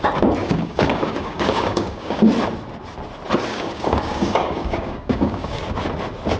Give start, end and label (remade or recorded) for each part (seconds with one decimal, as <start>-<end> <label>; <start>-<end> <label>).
0.0-0.4 recorded; 0.4-2.3 remade; 2.3-3.5 recorded; 3.5-5.6 remade; 5.6-6.4 recorded